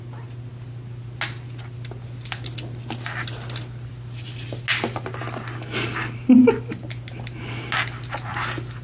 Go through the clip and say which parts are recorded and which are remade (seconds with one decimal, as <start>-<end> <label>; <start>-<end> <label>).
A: 0.0-8.8 recorded